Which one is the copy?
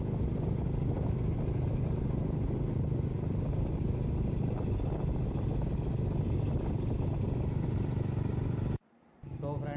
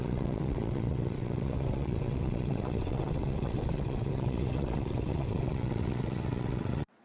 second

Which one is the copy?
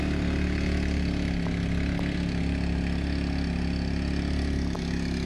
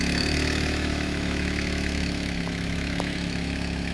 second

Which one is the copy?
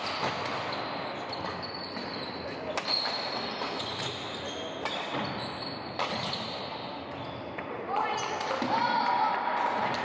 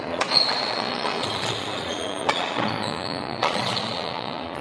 second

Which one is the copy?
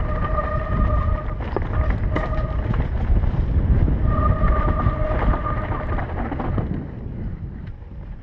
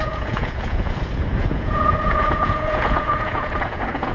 second